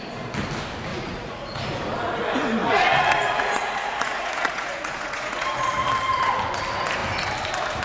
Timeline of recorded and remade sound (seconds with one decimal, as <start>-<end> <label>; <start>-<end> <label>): 0.0-0.9 recorded; 0.9-1.6 remade; 1.6-2.6 recorded; 2.6-5.9 remade; 5.9-7.8 recorded

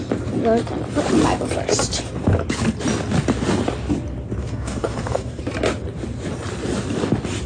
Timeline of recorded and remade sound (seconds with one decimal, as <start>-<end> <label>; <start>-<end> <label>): 0.0-4.4 recorded; 4.4-5.4 remade; 5.4-7.5 recorded

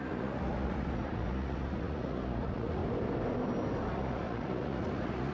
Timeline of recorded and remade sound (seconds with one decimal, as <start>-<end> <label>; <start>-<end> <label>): 0.0-2.8 remade; 2.8-3.9 recorded; 3.9-5.3 remade